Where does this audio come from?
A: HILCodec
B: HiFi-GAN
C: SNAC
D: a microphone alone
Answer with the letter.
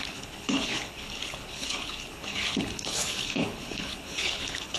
A